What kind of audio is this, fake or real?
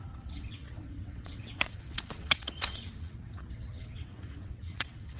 fake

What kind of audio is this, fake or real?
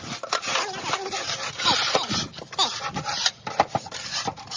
real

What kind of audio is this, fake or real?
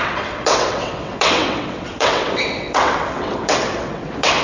fake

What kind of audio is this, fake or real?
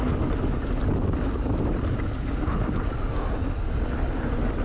real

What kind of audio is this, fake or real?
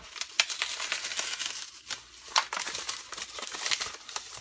real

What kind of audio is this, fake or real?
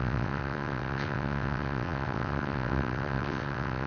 fake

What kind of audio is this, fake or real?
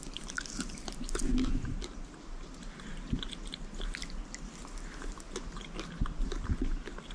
real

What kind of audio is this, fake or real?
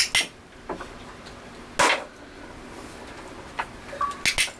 real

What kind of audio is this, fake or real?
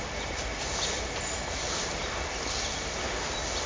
real